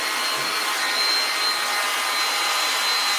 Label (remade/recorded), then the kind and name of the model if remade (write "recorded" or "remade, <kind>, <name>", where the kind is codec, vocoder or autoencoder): recorded